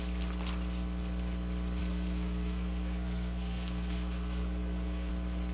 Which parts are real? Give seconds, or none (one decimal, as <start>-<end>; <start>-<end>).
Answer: 0.0-1.8; 5.1-5.5